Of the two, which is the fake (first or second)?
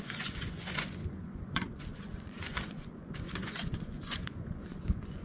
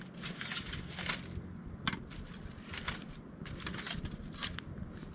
first